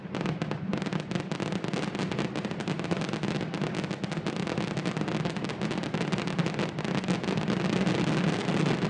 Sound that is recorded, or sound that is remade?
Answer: recorded